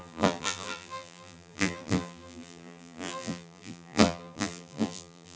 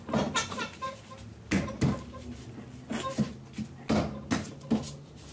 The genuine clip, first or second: second